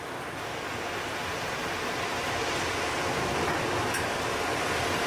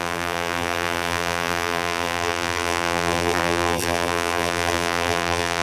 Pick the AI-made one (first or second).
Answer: second